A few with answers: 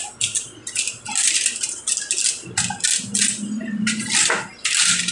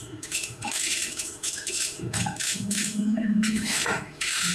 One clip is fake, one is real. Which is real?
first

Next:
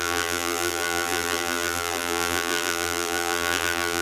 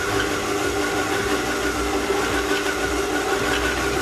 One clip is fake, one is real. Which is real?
second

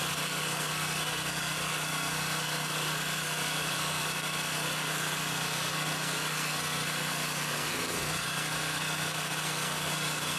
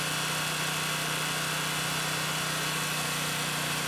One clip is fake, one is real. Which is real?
second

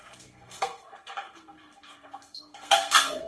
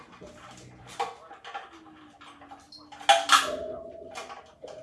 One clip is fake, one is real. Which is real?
second